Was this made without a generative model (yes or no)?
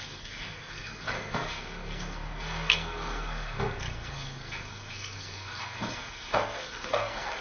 no